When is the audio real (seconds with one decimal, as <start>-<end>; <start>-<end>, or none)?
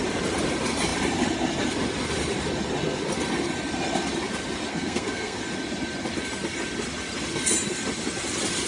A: 0.0-4.7; 5.4-8.7